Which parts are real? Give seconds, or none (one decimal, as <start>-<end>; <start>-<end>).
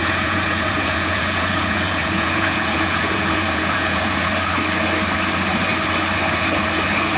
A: 4.3-7.2